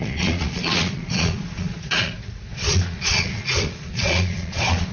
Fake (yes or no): yes